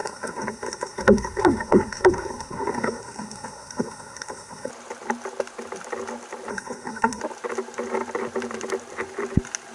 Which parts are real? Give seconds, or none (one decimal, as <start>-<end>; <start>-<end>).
4.7-6.5; 7.2-9.7